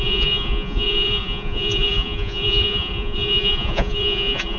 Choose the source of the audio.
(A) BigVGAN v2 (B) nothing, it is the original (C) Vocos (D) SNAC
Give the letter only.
C